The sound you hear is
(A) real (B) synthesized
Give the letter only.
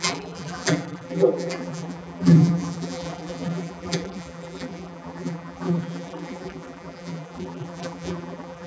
B